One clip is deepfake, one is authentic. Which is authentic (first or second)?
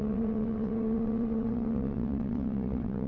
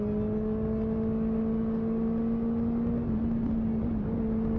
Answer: second